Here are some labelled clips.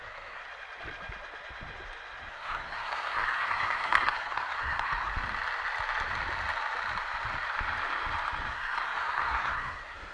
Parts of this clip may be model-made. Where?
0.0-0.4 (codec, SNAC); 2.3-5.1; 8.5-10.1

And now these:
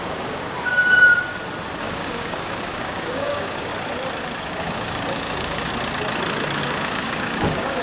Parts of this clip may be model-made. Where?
0.0-1.1 (codec, DAC); 1.8-3.7; 4.4-5.7; 6.6-7.8

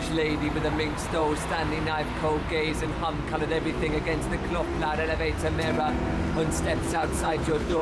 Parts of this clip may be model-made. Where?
6.8-7.8 (codec, HILCodec)

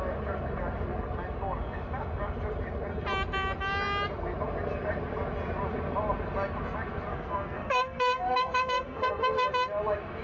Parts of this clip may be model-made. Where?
7.1-9.5 (codec, SNAC)

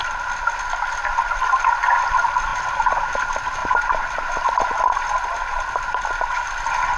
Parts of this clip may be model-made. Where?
0.0-7.0 (vocoder, BigVGAN v2)

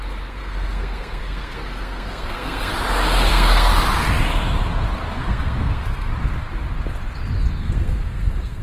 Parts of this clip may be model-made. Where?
0.0-2.7 (codec, SNAC); 3.3-3.7; 5.2-6.1; 7.6-8.6

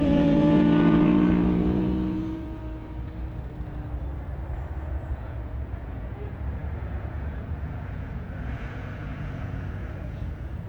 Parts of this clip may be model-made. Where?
0.0-2.6 (vocoder, Vocos); 4.8-10.7

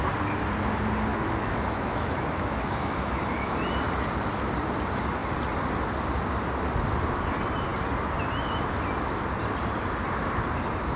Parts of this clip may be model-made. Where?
1.1-3.5 (autoencoder, DAC-VAE)